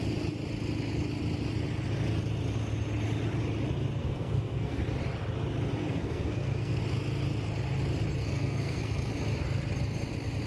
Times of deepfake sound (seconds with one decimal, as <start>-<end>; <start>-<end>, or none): 4.0-4.8; 5.8-6.8; 8.2-9.1